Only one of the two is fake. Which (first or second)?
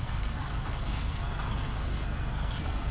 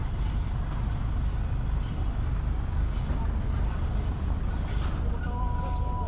first